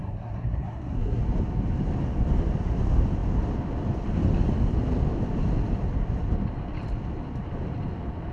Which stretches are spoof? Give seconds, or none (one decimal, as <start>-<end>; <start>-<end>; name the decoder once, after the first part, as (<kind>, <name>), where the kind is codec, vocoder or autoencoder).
0.0-1.2 (codec, SNAC)